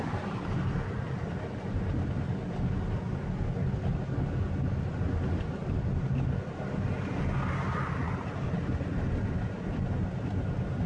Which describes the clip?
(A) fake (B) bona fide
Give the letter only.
B